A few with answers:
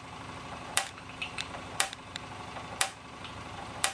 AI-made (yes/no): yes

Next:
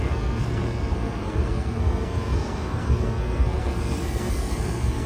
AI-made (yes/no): yes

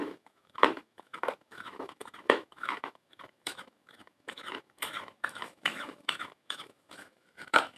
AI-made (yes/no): yes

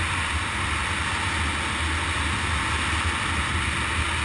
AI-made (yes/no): no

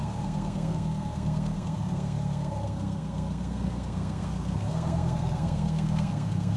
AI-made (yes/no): yes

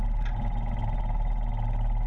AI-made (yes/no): no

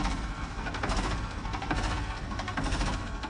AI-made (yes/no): yes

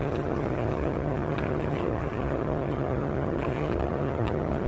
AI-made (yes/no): yes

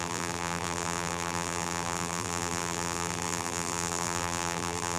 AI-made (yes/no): yes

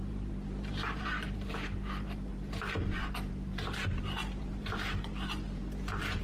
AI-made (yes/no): yes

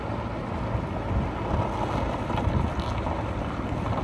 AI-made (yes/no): no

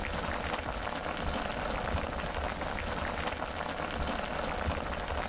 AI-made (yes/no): no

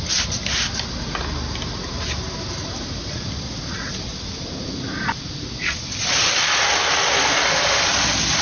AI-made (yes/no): no